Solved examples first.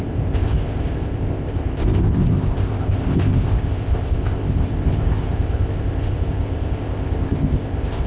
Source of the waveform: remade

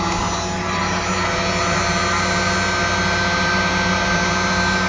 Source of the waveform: recorded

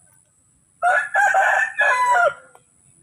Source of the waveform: recorded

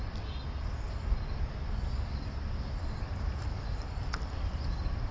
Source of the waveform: recorded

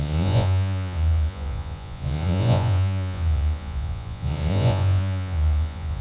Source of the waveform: remade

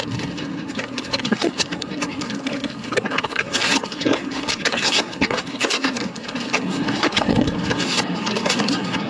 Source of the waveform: remade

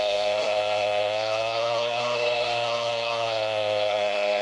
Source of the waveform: remade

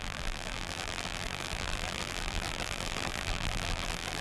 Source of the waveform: remade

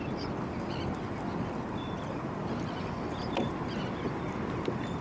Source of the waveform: recorded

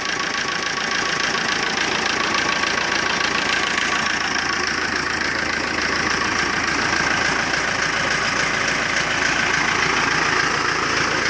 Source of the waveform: recorded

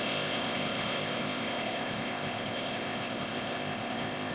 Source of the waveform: remade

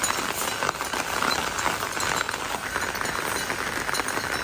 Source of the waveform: recorded